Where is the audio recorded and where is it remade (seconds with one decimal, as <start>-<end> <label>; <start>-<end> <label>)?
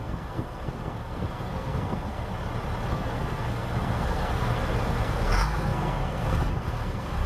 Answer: 0.0-2.3 remade; 2.3-2.9 recorded; 2.9-7.3 remade